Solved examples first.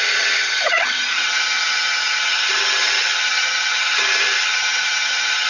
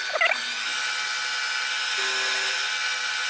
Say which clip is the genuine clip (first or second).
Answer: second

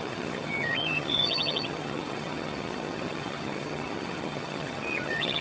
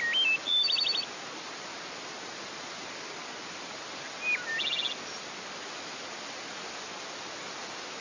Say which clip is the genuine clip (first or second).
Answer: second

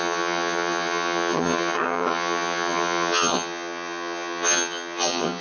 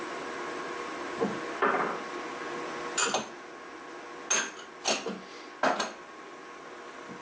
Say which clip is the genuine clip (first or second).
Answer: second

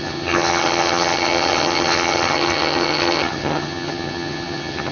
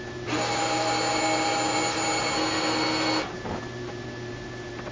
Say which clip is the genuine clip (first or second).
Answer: second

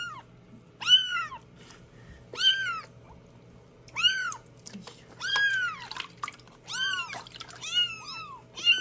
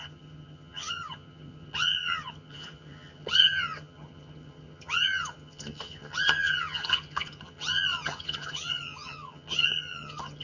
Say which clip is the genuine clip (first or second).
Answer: first